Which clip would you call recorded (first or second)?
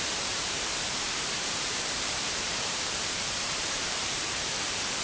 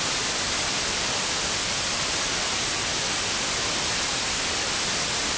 second